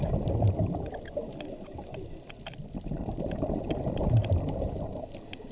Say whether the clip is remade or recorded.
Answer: recorded